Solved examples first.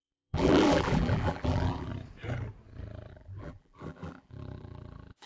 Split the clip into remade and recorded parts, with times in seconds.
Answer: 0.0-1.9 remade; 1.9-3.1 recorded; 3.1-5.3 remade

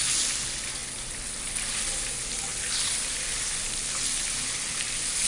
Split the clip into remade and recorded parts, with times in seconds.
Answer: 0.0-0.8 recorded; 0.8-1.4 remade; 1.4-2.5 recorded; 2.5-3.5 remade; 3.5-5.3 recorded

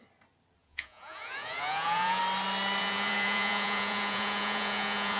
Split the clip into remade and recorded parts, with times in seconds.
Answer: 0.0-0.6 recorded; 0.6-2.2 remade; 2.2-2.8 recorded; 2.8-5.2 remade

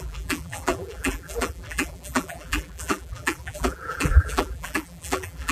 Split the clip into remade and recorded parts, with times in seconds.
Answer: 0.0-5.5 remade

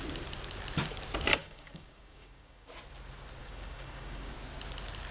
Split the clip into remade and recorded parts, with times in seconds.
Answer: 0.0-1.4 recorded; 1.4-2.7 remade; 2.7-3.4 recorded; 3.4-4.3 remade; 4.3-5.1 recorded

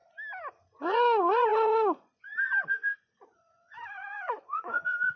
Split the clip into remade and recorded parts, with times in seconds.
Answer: 0.0-0.8 recorded; 0.8-5.2 remade